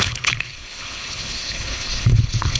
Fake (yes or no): yes